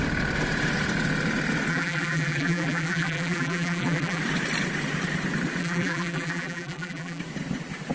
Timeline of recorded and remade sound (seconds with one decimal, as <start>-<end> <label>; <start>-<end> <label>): 0.0-1.7 recorded; 1.7-4.2 remade; 4.2-5.6 recorded; 5.6-7.2 remade; 7.2-7.9 recorded